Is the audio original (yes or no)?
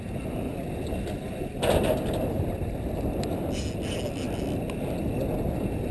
yes